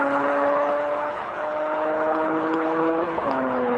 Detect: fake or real fake